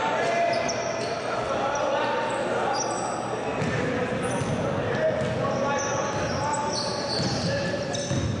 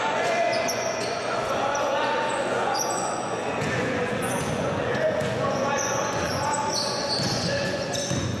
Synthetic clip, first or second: second